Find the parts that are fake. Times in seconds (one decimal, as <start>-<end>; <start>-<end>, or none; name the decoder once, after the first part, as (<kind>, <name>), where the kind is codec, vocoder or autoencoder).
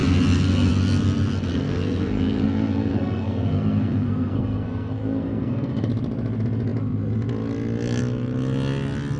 1.5-5.9 (codec, SNAC)